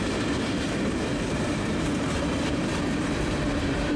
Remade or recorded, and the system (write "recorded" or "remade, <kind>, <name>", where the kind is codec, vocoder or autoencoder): remade, vocoder, BigVGAN v2